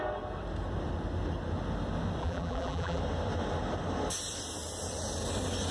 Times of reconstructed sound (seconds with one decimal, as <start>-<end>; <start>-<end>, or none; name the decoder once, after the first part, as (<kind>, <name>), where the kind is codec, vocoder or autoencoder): 2.2-3.0 (vocoder, BigVGAN v2)